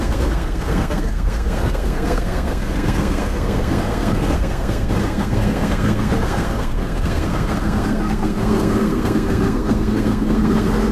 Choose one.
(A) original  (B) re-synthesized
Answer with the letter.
B